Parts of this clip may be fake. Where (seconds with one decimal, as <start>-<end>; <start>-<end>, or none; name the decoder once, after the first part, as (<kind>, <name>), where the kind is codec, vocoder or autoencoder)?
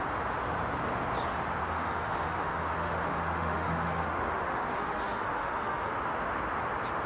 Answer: 1.6-5.9 (autoencoder, DAC-VAE)